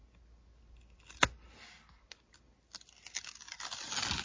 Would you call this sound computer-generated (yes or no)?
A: no